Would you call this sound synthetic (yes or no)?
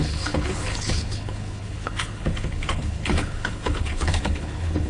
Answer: yes